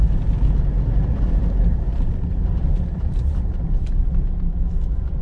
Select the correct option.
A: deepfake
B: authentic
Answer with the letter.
A